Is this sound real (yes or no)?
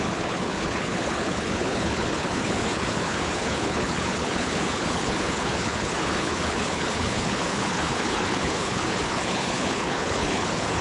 no